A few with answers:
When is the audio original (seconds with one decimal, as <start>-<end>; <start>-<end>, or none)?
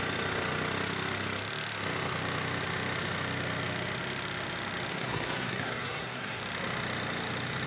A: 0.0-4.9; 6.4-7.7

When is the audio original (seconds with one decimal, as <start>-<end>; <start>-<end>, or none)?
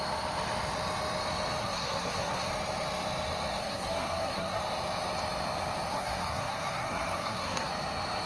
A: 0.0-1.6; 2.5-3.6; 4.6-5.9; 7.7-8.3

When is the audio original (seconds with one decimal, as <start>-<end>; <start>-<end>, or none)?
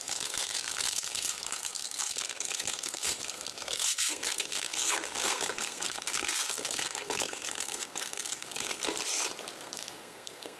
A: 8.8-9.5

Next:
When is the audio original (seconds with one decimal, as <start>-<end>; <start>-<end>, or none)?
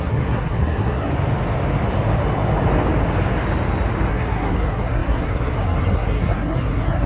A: 1.1-4.1